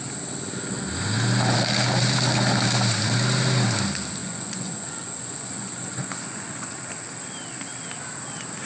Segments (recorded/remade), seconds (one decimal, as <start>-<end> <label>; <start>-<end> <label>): 0.0-4.2 recorded; 4.2-6.7 remade; 6.7-8.7 recorded

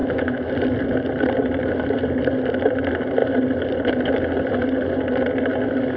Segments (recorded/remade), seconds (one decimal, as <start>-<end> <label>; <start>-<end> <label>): 0.0-0.5 remade; 0.5-6.0 recorded